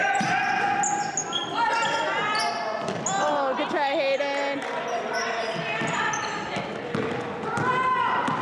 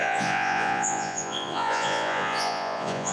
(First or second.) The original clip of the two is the first